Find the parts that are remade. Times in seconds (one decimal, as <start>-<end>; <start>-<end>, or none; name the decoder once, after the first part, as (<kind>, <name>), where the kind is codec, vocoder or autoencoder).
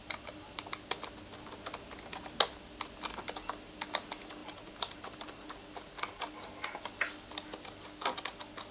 4.4-5.0 (vocoder, BigVGAN v2)